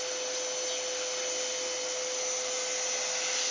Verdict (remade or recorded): recorded